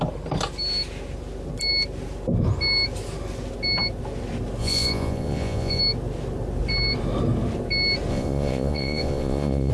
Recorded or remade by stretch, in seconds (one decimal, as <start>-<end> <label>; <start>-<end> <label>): 0.0-4.6 recorded; 4.6-5.8 remade; 5.8-8.1 recorded; 8.1-9.7 remade